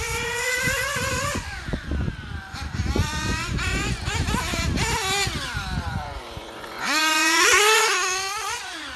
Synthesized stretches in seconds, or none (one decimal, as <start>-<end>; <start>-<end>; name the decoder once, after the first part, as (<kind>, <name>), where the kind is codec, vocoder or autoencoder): 0.0-4.1 (vocoder, Vocos); 5.8-9.0